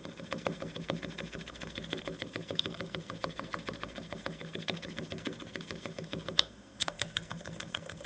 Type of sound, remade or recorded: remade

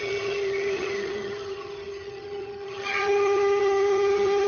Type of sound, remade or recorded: remade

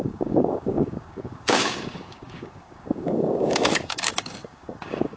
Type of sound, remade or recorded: remade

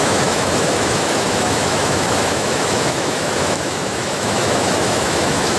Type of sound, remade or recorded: remade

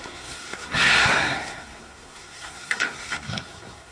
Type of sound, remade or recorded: remade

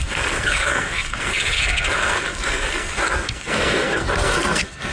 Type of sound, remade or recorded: remade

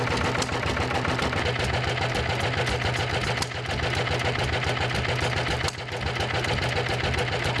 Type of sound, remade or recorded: recorded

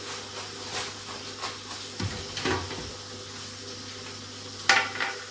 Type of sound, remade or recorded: recorded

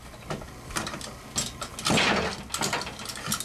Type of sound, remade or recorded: recorded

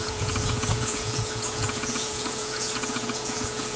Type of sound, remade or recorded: remade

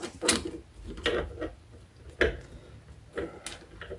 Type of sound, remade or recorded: recorded